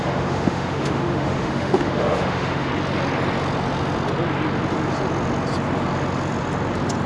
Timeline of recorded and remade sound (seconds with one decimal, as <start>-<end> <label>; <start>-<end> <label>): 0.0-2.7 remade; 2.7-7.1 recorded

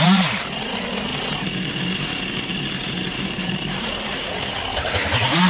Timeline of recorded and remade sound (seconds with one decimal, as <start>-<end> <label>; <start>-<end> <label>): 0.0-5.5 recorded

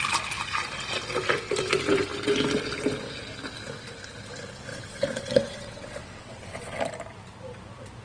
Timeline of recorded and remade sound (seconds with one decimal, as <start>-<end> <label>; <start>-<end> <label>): 0.0-4.7 recorded; 4.7-6.8 remade; 6.8-8.0 recorded

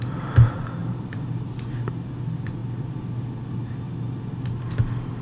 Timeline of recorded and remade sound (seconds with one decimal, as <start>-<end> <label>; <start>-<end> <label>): 0.0-5.2 recorded

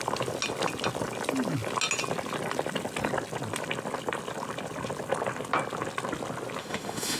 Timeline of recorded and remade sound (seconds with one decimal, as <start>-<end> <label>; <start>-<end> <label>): 0.0-6.6 recorded; 6.6-7.2 remade

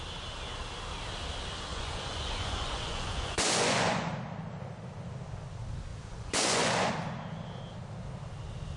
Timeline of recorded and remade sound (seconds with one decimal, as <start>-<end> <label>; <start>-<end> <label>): 0.0-1.7 recorded; 1.7-4.1 remade; 4.1-5.9 recorded; 5.9-6.9 remade; 6.9-8.8 recorded

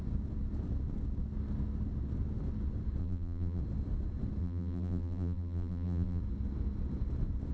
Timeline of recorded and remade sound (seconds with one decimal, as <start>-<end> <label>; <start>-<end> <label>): 0.0-3.0 recorded; 3.0-3.6 remade; 3.6-4.4 recorded; 4.4-6.2 remade; 6.2-7.5 recorded

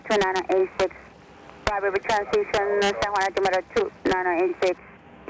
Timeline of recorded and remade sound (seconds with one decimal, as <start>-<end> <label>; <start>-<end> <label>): 0.0-5.3 recorded